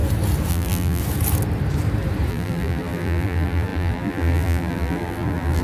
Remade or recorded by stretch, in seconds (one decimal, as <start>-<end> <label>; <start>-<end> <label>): 0.0-0.5 recorded; 0.5-1.0 remade; 1.0-2.3 recorded; 2.3-5.6 remade